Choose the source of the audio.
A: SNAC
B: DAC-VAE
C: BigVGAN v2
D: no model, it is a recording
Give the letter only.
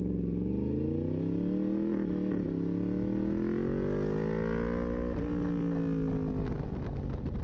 D